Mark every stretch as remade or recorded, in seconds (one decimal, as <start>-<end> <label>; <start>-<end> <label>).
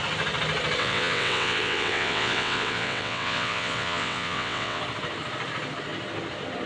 0.0-0.8 recorded; 0.8-4.8 remade; 4.8-6.7 recorded